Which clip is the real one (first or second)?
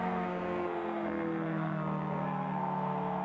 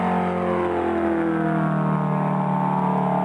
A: second